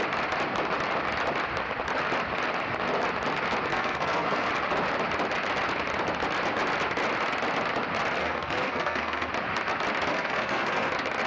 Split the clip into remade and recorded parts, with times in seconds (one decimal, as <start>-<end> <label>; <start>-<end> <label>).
0.0-3.7 recorded; 3.7-4.5 remade; 4.5-8.2 recorded; 8.2-9.3 remade; 9.3-10.1 recorded; 10.1-10.9 remade; 10.9-11.3 recorded